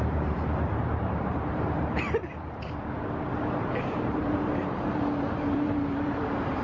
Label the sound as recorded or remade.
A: remade